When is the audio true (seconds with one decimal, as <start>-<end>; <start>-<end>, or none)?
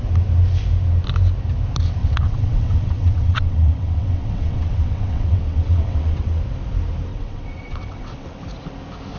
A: 0.0-2.0; 6.4-7.1; 8.4-9.2